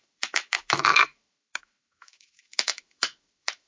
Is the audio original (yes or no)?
no